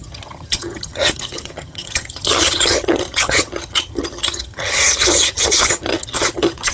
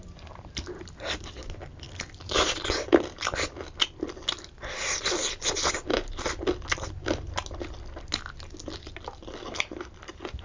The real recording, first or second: second